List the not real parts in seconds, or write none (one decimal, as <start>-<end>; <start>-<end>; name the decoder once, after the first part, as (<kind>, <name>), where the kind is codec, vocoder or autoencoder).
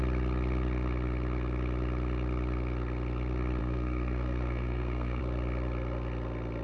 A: 3.6-5.2 (codec, SNAC)